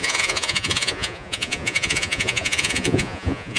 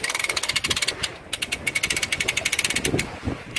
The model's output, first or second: first